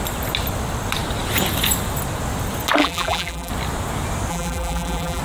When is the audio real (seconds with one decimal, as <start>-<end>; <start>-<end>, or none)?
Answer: 0.0-2.8; 3.5-4.3